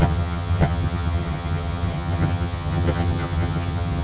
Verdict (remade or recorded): remade